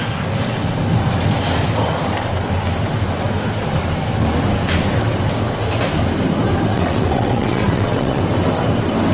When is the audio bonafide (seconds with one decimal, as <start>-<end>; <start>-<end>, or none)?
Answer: 0.0-6.7; 8.2-9.1